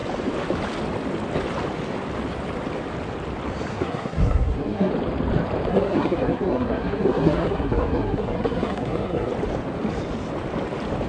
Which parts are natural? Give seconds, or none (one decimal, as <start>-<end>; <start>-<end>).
0.0-3.7; 4.9-5.7; 9.3-11.1